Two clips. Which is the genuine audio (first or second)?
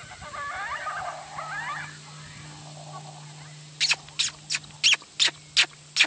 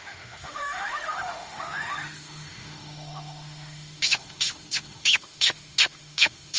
first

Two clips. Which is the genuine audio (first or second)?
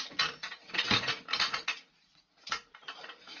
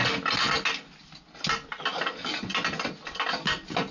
second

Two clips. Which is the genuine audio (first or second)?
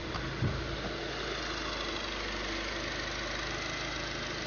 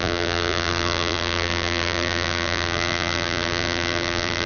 first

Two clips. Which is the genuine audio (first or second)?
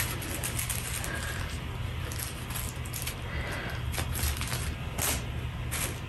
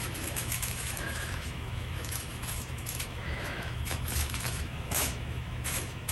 first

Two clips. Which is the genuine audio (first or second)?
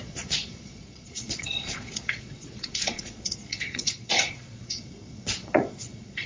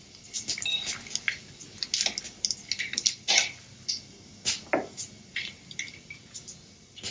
second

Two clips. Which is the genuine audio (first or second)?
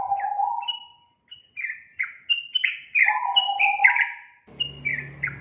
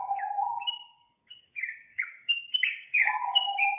first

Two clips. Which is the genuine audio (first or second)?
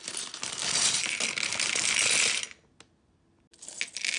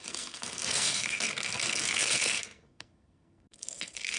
first